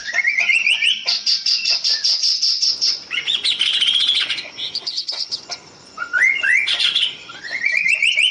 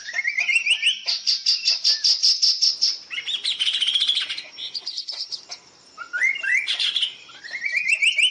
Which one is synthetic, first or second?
first